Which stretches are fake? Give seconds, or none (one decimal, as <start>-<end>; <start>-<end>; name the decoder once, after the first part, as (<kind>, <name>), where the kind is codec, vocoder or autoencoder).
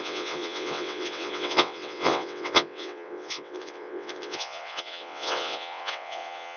0.0-6.6 (vocoder, WaveNeXt)